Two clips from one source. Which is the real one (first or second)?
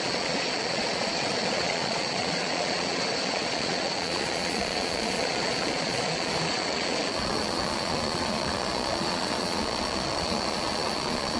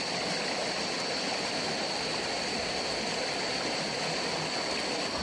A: second